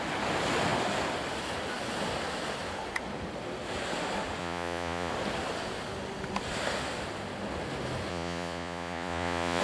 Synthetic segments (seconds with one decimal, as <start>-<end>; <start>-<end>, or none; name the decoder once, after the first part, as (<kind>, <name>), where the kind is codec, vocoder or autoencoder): 4.4-5.1 (vocoder, Vocos); 8.1-9.6